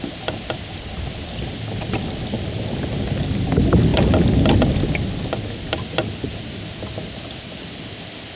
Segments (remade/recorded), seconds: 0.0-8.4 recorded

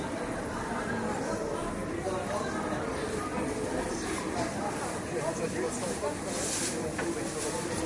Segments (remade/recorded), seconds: 0.0-7.9 recorded

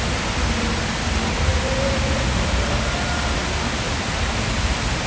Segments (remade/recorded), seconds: 0.0-5.1 recorded

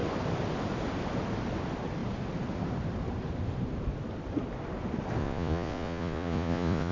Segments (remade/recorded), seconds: 0.0-5.2 recorded; 5.2-6.9 remade